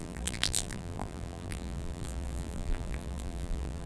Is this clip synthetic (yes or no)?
yes